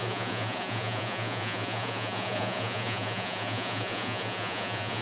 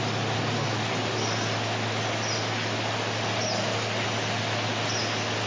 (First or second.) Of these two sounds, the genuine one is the second